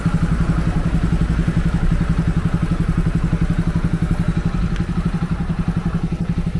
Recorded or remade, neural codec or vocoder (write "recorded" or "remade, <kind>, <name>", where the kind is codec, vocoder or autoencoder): recorded